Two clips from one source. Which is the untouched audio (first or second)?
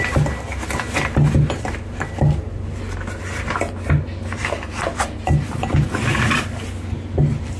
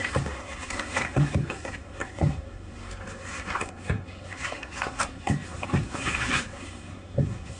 first